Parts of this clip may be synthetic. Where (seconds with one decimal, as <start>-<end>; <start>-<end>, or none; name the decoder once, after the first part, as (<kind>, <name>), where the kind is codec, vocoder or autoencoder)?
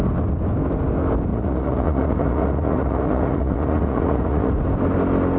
1.3-4.5 (vocoder, Vocos)